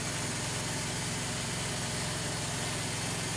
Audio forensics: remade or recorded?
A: recorded